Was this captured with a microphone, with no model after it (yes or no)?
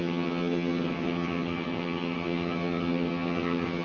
no